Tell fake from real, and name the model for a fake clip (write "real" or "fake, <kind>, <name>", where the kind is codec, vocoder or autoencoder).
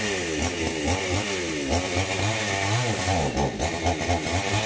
real